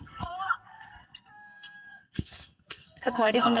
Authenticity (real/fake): fake